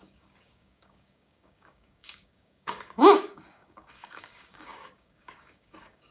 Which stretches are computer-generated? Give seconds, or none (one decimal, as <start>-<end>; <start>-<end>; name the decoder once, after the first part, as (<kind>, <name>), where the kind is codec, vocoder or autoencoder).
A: 0.0-6.1 (codec, DAC)